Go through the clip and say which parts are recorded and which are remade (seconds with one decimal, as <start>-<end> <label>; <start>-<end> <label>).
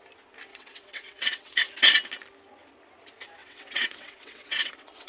0.0-0.5 recorded; 0.5-1.7 remade; 1.7-3.4 recorded; 3.4-5.1 remade